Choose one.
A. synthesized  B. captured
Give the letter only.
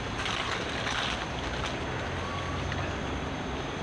B